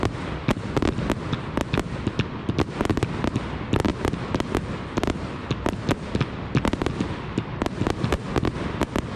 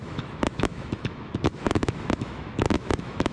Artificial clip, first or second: second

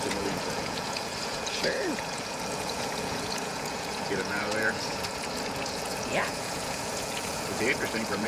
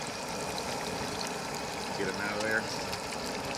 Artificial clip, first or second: first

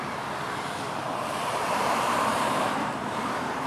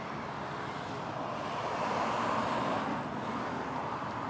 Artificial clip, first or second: first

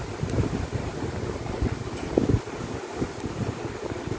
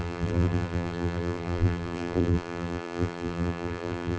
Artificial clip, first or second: second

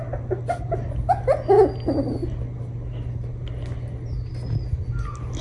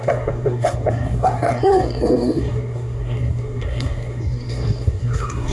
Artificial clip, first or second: second